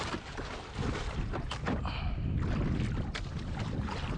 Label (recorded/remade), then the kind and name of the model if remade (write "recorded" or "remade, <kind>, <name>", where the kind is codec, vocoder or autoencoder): recorded